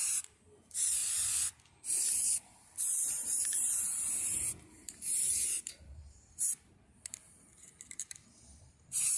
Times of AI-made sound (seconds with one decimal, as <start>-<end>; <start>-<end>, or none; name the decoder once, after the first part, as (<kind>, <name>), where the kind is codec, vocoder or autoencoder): 0.0-1.0 (vocoder, BigVGAN v2); 1.8-6.2; 6.7-9.2